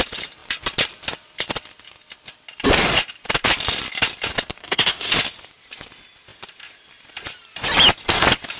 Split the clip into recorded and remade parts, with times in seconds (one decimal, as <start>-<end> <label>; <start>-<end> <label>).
0.0-4.6 recorded; 4.6-5.1 remade; 5.1-8.6 recorded